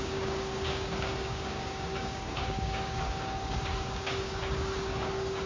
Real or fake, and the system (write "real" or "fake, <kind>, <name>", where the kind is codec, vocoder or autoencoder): fake, codec, DAC